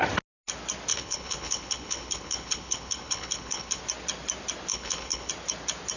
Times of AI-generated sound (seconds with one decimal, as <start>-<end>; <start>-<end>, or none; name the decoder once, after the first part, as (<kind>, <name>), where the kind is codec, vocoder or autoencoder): 0.9-3.8 (codec, HILCodec); 4.7-5.3

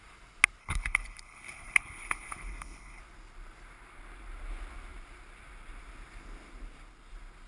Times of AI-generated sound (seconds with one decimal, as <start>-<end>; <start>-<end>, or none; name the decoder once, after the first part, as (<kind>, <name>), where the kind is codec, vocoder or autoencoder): 0.6-3.0 (codec, HILCodec)

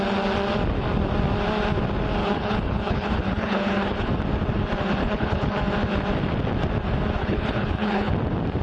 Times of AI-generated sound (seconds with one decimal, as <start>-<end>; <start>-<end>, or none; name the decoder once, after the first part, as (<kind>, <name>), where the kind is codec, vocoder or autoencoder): 2.2-4.1 (codec, HILCodec); 5.0-5.6; 7.2-8.1

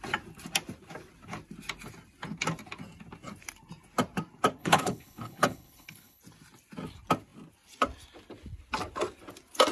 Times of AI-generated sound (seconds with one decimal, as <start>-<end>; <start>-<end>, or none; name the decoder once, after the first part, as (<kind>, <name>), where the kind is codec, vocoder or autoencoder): 4.6-6.2 (codec, HILCodec)